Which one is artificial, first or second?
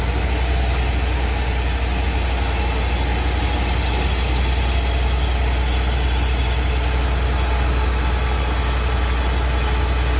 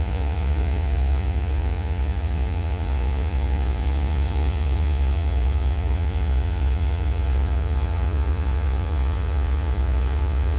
second